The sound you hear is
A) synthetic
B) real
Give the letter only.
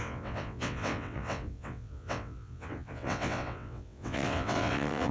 A